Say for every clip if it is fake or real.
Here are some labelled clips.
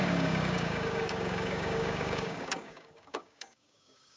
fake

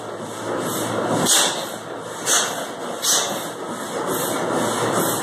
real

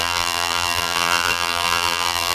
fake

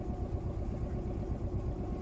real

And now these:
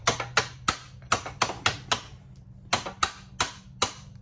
real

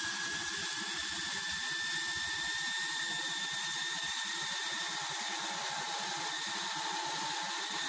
real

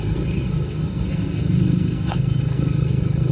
fake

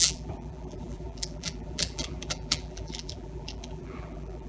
fake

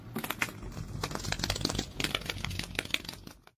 real